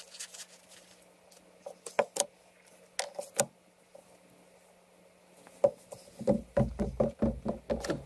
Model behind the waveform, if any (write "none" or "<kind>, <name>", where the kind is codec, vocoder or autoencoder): none